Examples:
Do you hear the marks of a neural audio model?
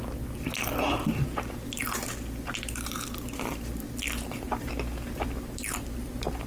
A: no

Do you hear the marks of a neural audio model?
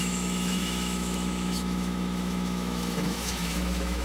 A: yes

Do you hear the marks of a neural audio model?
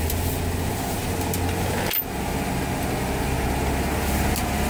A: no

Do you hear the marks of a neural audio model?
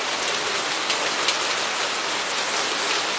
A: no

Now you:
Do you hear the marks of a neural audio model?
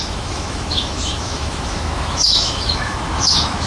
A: yes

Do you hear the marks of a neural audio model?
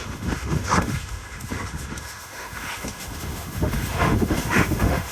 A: yes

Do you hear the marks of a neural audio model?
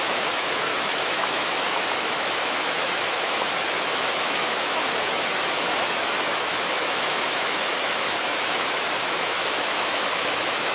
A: yes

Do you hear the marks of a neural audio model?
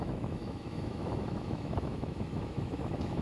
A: yes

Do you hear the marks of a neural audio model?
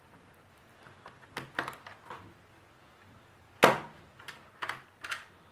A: no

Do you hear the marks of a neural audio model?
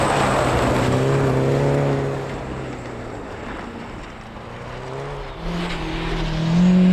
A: no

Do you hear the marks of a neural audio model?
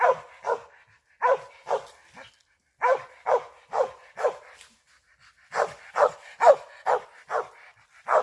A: no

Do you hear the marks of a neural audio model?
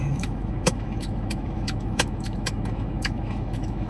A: yes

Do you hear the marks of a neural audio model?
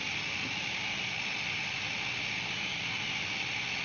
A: no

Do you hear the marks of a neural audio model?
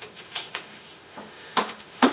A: yes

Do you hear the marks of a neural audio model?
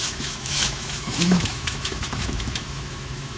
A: yes